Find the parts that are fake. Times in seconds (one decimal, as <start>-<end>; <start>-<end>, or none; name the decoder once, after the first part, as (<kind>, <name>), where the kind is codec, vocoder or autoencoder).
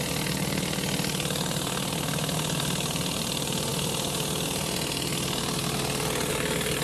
none